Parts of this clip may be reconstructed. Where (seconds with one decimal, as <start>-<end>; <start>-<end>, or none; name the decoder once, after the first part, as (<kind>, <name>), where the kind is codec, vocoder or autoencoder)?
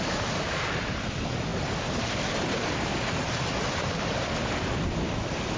none